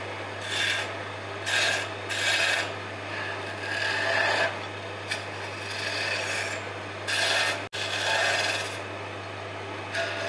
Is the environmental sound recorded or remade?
recorded